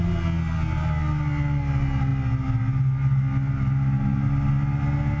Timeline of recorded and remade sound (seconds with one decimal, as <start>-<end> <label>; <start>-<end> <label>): 0.0-5.2 recorded